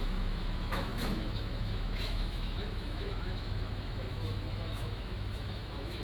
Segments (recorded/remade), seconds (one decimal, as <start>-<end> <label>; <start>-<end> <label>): 0.0-6.0 remade